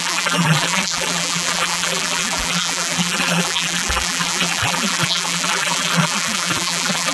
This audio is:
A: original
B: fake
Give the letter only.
B